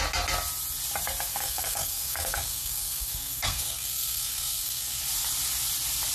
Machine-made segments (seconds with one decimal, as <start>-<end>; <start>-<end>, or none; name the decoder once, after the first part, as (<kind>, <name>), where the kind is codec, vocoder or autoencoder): 1.3-5.0 (codec, SNAC)